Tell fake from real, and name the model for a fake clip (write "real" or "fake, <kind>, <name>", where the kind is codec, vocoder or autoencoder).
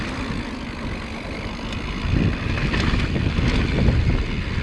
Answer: real